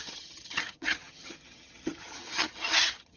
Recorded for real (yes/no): no